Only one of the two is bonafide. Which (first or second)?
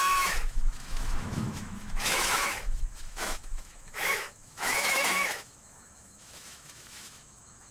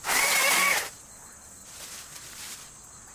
second